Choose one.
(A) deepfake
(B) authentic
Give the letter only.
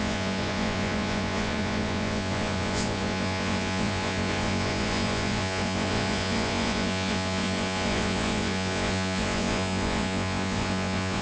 A